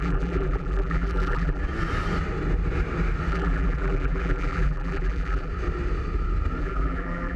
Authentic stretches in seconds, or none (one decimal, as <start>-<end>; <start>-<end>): 1.6-3.3; 5.5-6.6